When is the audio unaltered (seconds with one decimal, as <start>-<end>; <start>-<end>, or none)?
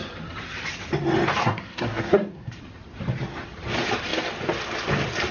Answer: 0.0-1.4; 2.5-5.3